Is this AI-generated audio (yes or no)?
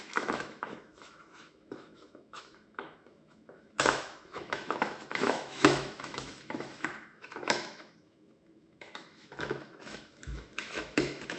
yes